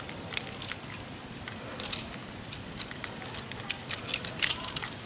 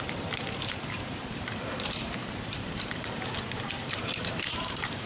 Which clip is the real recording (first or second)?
first